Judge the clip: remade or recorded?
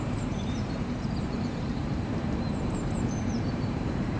remade